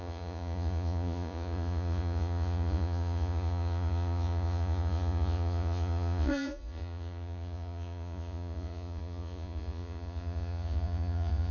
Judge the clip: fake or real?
fake